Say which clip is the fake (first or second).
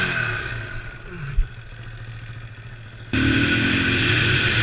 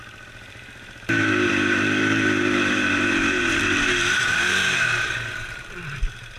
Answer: second